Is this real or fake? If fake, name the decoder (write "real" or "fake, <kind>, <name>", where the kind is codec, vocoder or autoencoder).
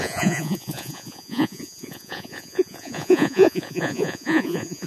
fake, vocoder, Vocos